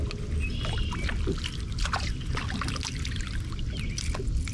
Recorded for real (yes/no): yes